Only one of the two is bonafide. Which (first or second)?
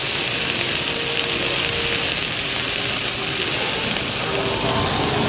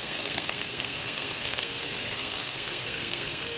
first